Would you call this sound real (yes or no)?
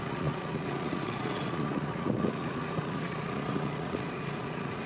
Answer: no